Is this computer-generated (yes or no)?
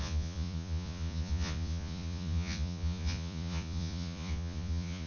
yes